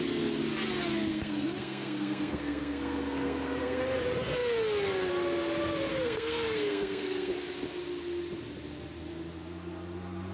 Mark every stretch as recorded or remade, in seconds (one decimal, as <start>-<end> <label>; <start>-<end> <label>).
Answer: 0.0-1.1 recorded; 1.1-3.8 remade; 3.8-5.9 recorded; 5.9-7.3 remade; 7.3-10.3 recorded